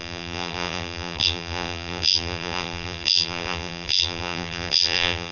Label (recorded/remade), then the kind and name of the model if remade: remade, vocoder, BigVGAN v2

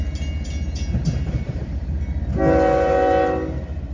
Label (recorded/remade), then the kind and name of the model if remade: recorded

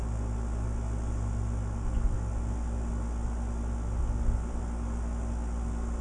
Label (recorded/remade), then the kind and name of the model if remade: recorded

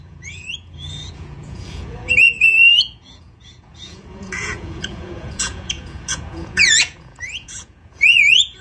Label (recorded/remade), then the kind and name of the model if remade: remade, vocoder, Vocos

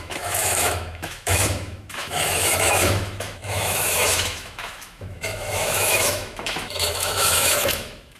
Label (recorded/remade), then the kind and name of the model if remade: remade, autoencoder, DAC-VAE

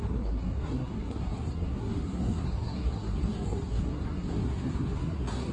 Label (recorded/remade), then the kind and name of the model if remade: remade, codec, SNAC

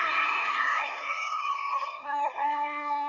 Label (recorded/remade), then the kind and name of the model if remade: remade, codec, SNAC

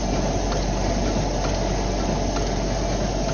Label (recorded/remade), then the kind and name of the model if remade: recorded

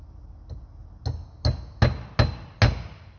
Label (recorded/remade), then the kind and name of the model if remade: recorded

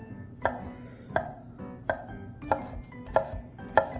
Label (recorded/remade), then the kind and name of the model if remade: recorded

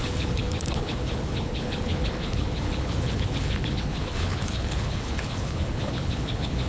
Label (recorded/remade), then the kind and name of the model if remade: remade, codec, HILCodec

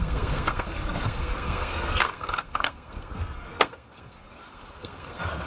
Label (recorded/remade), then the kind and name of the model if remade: remade, codec, SNAC